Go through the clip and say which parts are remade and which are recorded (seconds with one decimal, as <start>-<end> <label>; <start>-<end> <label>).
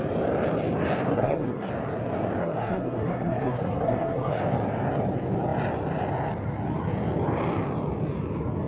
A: 0.0-1.1 recorded; 1.1-1.7 remade; 1.7-2.4 recorded; 2.4-4.4 remade; 4.4-8.7 recorded